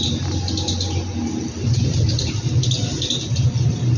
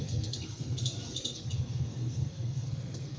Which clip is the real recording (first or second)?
first